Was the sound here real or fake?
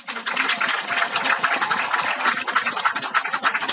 real